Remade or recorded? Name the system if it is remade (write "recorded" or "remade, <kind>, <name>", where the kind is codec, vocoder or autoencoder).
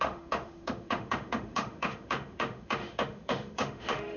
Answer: remade, autoencoder, DAC-VAE